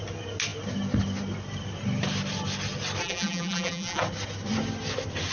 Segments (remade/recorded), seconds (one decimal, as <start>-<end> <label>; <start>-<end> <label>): 0.0-3.0 recorded; 3.0-4.0 remade; 4.0-5.3 recorded

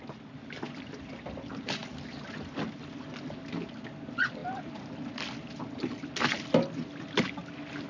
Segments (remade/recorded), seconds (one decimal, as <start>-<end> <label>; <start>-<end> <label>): 0.0-7.9 recorded

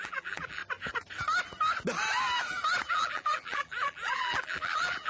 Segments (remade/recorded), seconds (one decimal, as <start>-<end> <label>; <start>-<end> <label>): 0.0-0.6 remade; 0.6-2.9 recorded; 2.9-5.1 remade

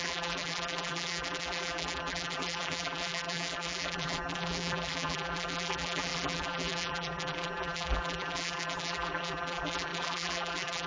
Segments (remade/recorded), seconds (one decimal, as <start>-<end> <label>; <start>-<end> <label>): 0.0-10.9 remade

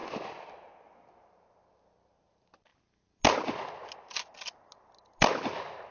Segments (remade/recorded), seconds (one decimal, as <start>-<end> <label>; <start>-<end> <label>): 0.0-0.7 remade; 0.7-5.9 recorded

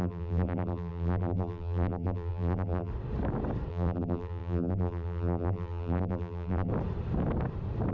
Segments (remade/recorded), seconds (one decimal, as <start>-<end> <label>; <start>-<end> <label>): 0.0-2.9 remade; 2.9-3.7 recorded; 3.7-6.7 remade; 6.7-7.9 recorded